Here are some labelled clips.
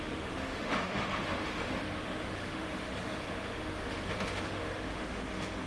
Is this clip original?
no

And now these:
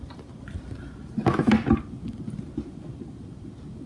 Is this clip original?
yes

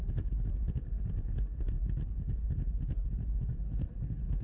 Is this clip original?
yes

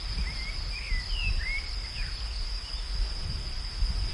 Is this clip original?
yes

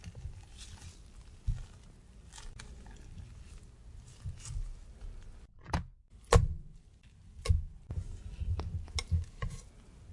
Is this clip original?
yes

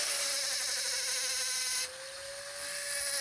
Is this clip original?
yes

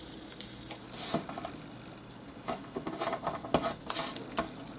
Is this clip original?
yes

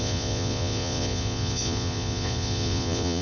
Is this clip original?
no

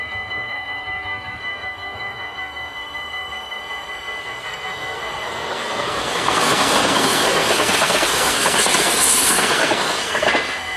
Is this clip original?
no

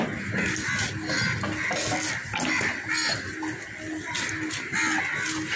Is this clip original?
yes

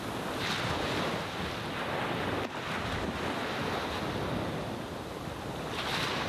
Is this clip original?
yes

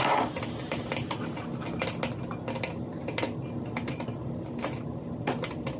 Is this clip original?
yes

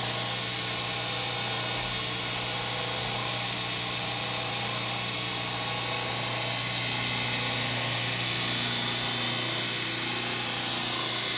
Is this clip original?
yes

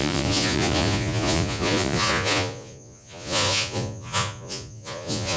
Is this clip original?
no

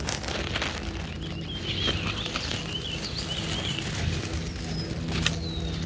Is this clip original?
yes